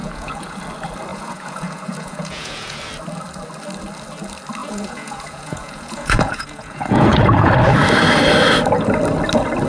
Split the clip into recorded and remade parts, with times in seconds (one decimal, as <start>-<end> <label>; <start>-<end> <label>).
0.0-0.6 remade; 0.6-1.1 recorded; 1.1-2.8 remade; 2.8-4.6 recorded; 4.6-7.5 remade; 7.5-9.7 recorded